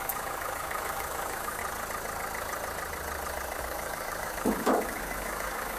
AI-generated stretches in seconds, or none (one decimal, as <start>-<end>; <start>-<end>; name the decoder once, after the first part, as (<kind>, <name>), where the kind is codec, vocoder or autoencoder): 0.0-1.6 (codec, DAC); 3.6-5.8